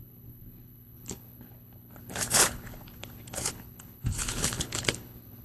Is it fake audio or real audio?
fake